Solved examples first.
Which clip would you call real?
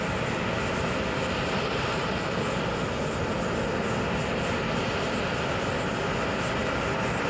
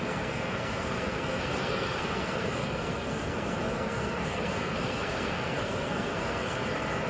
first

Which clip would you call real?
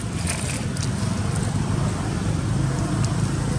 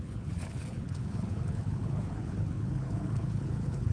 first